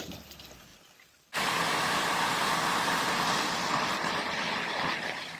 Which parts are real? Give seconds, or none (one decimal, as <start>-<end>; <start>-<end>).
0.0-5.4